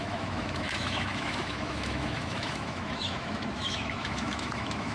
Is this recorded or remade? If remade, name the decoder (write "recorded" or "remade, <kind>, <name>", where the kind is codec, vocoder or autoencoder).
remade, autoencoder, DAC-VAE